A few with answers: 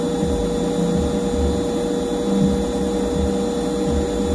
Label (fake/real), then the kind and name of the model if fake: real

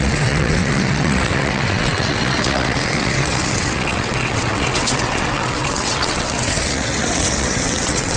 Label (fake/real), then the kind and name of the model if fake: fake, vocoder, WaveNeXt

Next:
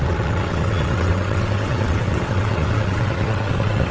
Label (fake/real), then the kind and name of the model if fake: fake, vocoder, WaveNeXt